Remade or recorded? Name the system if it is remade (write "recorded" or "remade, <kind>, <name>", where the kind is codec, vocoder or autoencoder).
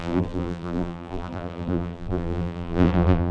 remade, vocoder, BigVGAN v2